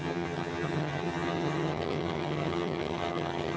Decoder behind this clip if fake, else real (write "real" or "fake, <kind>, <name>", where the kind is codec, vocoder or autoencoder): fake, vocoder, HiFi-GAN